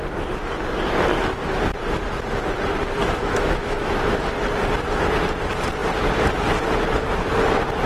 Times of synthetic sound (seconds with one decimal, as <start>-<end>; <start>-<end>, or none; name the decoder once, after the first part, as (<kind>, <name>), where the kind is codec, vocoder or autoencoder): 3.0-4.2 (autoencoder, DAC-VAE)